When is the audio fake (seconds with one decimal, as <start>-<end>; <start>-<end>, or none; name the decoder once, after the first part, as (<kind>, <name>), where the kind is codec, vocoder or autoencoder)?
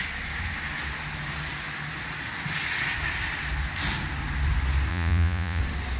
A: 4.9-5.6 (vocoder, Vocos)